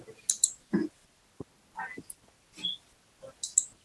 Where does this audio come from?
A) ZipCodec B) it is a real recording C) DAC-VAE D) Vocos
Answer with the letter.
B